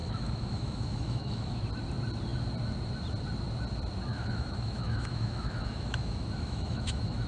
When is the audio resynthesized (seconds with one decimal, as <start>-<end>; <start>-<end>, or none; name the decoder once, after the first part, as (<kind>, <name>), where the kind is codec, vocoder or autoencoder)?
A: 0.0-1.6 (autoencoder, DAC-VAE); 4.1-7.3